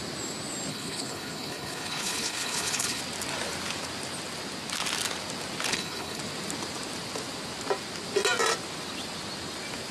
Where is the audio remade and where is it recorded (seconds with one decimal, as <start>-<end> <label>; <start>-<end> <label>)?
0.0-0.7 recorded; 0.7-3.0 remade; 3.0-5.7 recorded; 5.7-6.2 remade; 6.2-9.9 recorded